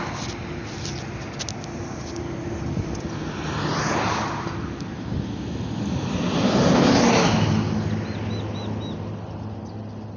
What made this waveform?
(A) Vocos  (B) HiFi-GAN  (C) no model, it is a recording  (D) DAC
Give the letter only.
C